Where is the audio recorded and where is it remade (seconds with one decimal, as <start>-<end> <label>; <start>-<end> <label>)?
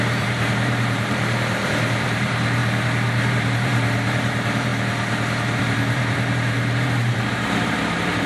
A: 0.0-2.6 remade; 2.6-3.3 recorded; 3.3-4.7 remade; 4.7-5.6 recorded; 5.6-8.3 remade